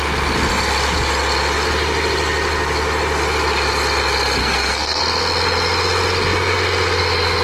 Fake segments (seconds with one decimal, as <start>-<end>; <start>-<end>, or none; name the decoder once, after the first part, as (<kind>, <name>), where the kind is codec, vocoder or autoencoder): 4.4-5.0 (codec, SNAC)